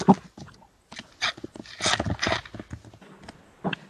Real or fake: real